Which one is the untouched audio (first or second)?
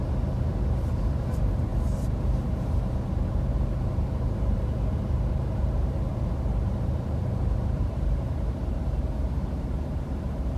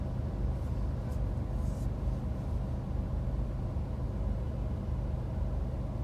second